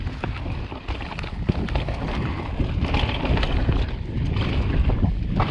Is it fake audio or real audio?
real